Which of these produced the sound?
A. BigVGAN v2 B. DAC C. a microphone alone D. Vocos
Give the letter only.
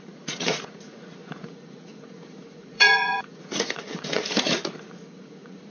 D